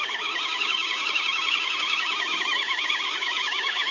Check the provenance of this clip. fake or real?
fake